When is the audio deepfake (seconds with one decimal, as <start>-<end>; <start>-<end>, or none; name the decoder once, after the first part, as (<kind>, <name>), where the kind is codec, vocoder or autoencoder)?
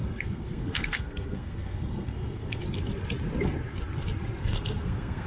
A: 0.0-2.6 (codec, SNAC); 4.4-5.3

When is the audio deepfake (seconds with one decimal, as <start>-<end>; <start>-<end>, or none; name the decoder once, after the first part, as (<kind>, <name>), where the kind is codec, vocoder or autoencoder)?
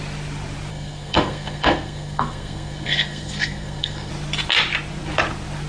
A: 0.7-4.1 (codec, SNAC)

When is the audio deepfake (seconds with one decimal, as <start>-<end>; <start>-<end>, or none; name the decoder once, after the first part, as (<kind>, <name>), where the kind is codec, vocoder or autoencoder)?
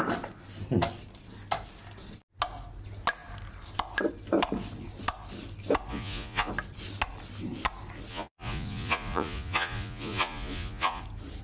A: 5.9-6.5 (vocoder, Vocos); 8.1-11.0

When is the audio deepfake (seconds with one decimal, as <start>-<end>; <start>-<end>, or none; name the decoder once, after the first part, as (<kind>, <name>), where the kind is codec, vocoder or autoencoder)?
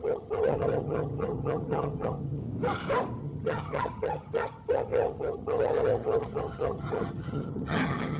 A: 0.0-2.4 (vocoder, HiFi-GAN); 3.2-8.2